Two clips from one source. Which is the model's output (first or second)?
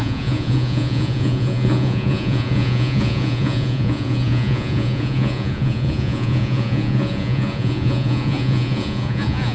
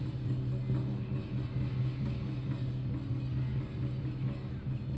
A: first